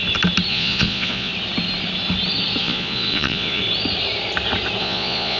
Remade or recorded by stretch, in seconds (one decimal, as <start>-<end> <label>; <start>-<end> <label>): 0.0-0.5 recorded; 0.5-1.3 remade; 1.3-2.6 recorded; 2.6-3.6 remade; 3.6-4.8 recorded; 4.8-5.4 remade